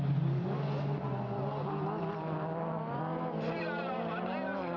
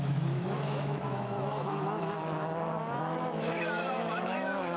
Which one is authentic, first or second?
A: first